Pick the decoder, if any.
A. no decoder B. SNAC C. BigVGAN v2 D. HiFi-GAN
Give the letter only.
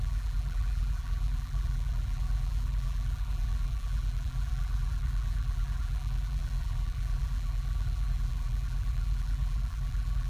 C